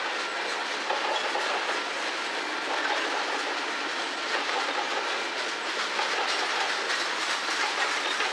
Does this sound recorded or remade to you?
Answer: recorded